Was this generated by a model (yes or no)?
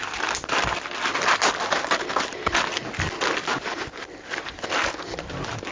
no